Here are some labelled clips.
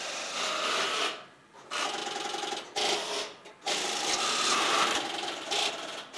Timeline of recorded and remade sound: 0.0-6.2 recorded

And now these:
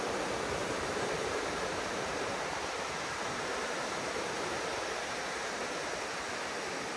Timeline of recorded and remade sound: 0.0-0.6 recorded; 0.6-4.7 remade; 4.7-7.0 recorded